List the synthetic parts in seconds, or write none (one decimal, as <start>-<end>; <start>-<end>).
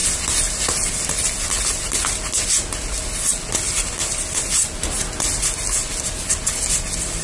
none